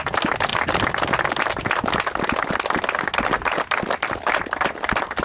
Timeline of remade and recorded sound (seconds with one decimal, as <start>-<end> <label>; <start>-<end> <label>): 0.0-5.2 recorded